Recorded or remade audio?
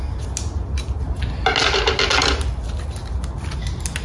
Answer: recorded